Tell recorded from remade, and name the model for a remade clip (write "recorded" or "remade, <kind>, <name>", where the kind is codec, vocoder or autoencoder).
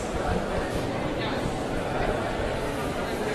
remade, vocoder, BigVGAN v2